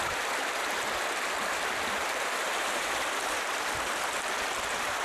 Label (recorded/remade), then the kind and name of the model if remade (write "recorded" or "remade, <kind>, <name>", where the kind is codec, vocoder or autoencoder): remade, vocoder, BigVGAN v2